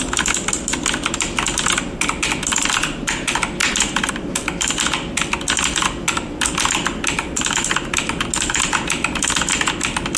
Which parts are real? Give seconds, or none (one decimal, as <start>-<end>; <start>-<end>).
0.0-3.6; 4.1-10.2